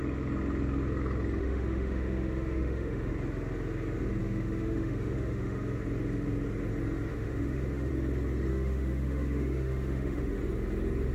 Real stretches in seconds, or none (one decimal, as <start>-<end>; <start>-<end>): 0.0-1.4; 3.1-4.2; 5.6-7.1; 7.9-8.5; 10.4-11.1